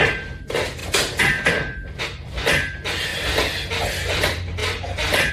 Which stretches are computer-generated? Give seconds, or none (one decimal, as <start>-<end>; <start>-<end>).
0.0-0.8; 1.5-3.1; 3.7-5.3